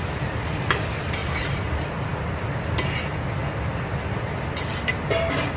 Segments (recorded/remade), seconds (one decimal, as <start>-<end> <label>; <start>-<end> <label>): 0.0-5.6 recorded